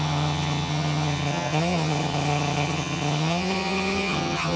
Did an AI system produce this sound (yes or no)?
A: yes